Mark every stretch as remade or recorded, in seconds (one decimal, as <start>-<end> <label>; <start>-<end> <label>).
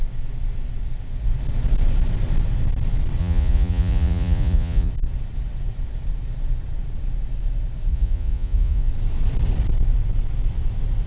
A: 0.0-3.2 recorded; 3.2-4.9 remade; 4.9-7.9 recorded; 7.9-8.9 remade; 8.9-11.1 recorded